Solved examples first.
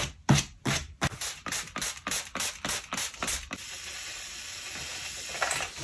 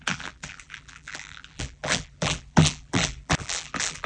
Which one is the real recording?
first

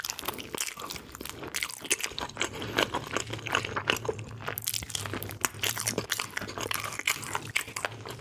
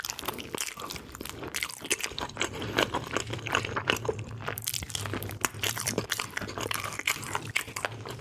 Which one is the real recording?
first